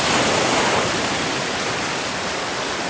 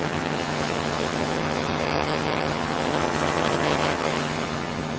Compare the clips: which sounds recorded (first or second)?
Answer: first